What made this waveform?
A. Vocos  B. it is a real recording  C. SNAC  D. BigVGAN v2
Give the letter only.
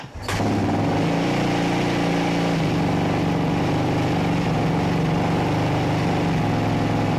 B